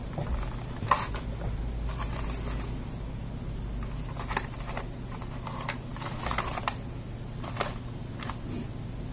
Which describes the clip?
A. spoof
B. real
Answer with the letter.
B